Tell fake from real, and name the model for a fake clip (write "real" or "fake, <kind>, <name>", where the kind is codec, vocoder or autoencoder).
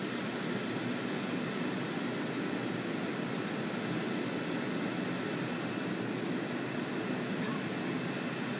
real